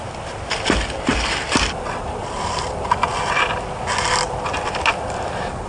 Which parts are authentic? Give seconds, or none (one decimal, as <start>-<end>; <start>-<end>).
0.0-5.7